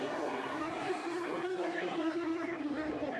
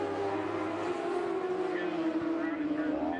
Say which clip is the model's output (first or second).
first